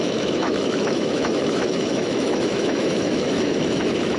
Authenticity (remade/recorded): remade